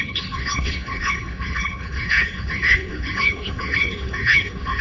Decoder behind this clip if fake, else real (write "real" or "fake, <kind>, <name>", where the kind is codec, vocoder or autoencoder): fake, codec, HILCodec